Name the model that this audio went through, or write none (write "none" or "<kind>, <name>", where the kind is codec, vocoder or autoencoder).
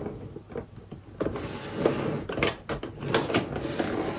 none